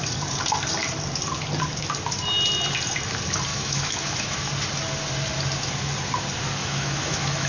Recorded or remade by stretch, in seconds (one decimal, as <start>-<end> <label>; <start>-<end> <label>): 0.0-3.5 recorded; 3.5-4.5 remade; 4.5-6.6 recorded; 6.6-7.5 remade